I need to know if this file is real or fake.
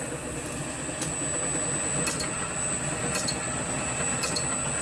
real